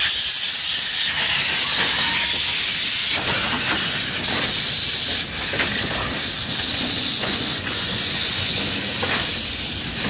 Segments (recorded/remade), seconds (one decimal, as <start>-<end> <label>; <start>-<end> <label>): 0.0-6.7 recorded; 6.7-8.6 remade; 8.6-10.1 recorded